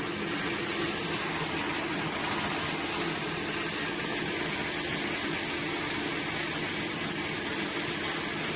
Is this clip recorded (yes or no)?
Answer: yes